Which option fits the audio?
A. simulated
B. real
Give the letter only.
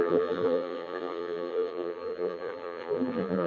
A